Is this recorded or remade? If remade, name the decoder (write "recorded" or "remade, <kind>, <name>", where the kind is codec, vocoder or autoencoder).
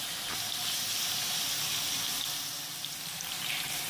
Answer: recorded